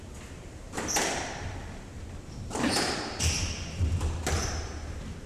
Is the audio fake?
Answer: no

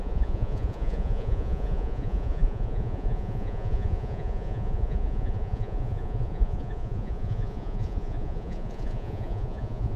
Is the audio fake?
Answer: yes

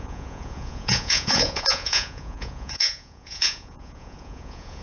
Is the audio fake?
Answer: yes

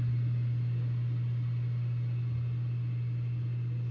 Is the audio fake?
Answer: no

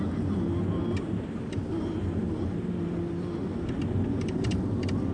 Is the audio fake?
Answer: no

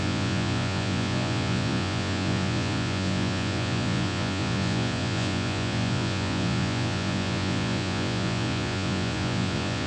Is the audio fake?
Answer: yes